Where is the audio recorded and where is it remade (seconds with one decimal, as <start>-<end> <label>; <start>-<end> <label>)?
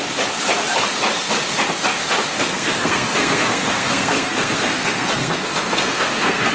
0.0-2.3 recorded; 2.3-6.5 remade